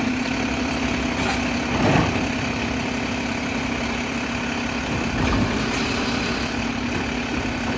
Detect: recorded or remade recorded